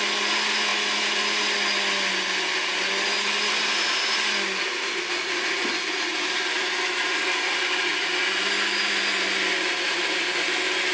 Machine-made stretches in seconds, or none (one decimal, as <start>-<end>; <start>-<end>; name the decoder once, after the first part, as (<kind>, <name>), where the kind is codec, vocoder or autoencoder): none